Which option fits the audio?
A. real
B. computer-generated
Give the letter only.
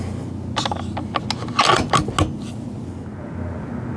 A